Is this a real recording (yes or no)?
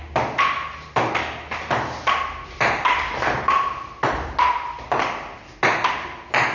yes